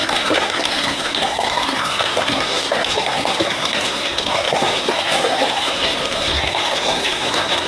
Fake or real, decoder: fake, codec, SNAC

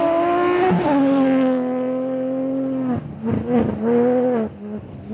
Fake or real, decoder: real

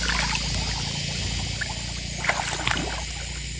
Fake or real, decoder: real